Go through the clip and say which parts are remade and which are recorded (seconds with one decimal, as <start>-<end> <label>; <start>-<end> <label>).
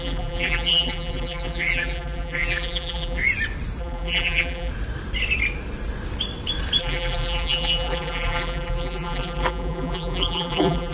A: 0.0-3.2 remade; 3.2-3.8 recorded; 3.8-4.7 remade; 4.7-6.8 recorded; 6.8-10.9 remade